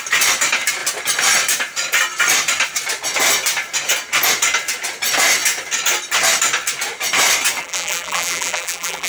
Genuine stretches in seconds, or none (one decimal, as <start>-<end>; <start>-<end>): 0.0-7.6